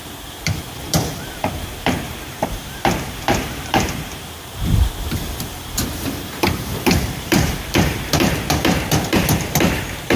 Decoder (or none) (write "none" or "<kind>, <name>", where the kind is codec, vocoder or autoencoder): vocoder, BigVGAN v2